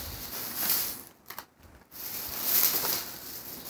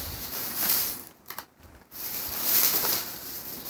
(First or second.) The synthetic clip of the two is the second